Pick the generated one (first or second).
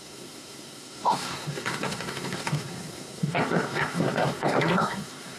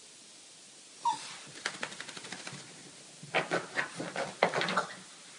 first